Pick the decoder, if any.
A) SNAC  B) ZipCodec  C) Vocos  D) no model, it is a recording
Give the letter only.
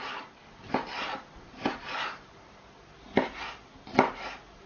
D